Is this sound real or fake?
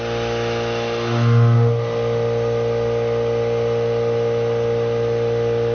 real